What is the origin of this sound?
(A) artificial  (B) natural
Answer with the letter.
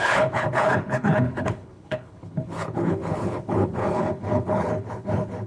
A